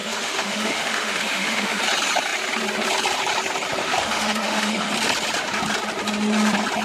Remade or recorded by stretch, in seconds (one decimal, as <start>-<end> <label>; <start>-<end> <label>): 0.0-1.8 remade; 1.8-3.8 recorded; 3.8-4.9 remade; 4.9-6.8 recorded

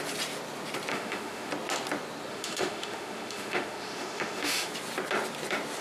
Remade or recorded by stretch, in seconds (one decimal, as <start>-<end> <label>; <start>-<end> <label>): 0.0-0.9 recorded; 0.9-1.5 remade; 1.5-2.3 recorded; 2.3-4.7 remade; 4.7-5.8 recorded

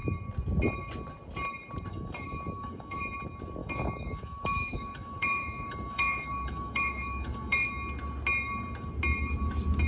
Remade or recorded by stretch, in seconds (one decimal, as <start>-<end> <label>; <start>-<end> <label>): 0.0-1.9 recorded; 1.9-3.0 remade; 3.0-3.6 recorded; 3.6-7.7 remade; 7.7-9.9 recorded

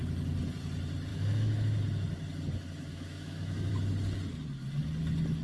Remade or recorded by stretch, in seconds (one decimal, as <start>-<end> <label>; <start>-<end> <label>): 0.0-1.1 recorded; 1.1-1.8 remade; 1.8-2.9 recorded; 2.9-3.7 remade; 3.7-5.4 recorded

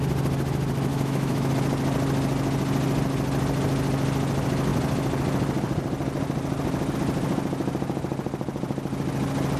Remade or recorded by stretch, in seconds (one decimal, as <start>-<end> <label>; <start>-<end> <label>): 0.0-0.9 recorded; 0.9-1.5 remade; 1.5-9.6 recorded

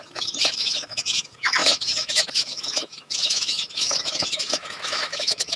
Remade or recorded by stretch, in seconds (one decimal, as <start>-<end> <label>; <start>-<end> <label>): 0.0-5.6 remade